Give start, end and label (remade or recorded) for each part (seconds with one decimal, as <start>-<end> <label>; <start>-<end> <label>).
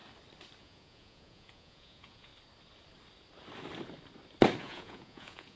0.0-0.6 recorded; 0.6-2.3 remade; 2.3-4.6 recorded; 4.6-5.6 remade